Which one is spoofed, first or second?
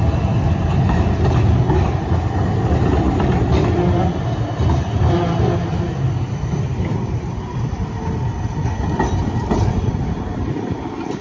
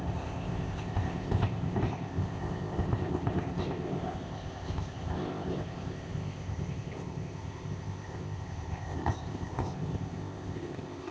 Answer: second